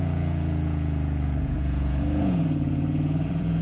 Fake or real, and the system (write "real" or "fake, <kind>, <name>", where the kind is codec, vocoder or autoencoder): fake, vocoder, Vocos